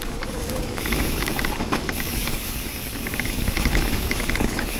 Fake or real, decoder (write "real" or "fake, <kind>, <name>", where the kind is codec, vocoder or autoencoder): fake, codec, DAC